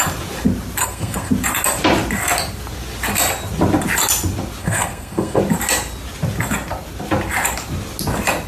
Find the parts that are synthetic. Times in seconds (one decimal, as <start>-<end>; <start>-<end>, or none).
0.8-1.3; 4.6-5.4